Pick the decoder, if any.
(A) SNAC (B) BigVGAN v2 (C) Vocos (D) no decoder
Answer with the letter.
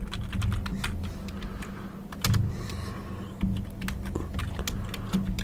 D